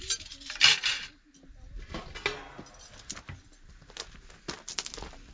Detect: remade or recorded recorded